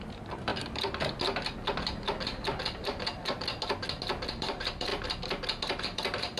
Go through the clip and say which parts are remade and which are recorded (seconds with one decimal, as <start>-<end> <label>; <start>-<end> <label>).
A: 0.0-0.5 remade; 0.5-4.3 recorded; 4.3-4.9 remade; 4.9-5.8 recorded; 5.8-6.4 remade